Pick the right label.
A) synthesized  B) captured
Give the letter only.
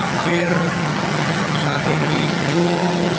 A